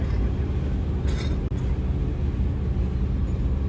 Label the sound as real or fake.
real